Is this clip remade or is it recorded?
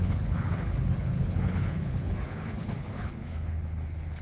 remade